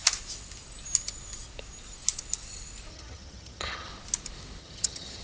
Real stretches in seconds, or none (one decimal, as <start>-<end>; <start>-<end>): 0.0-2.9; 3.9-4.6